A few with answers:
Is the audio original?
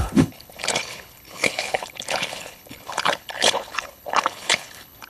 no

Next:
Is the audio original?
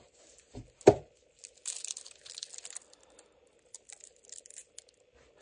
yes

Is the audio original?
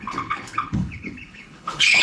no